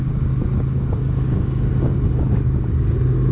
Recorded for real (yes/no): no